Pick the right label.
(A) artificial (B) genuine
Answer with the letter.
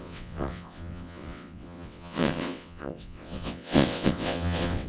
A